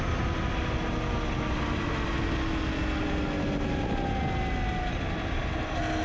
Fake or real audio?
real